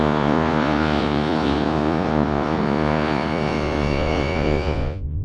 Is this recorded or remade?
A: remade